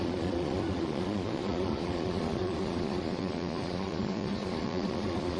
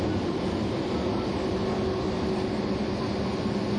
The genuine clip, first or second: second